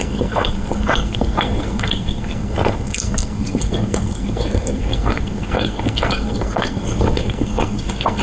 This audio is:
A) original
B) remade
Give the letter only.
B